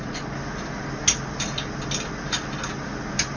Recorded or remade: recorded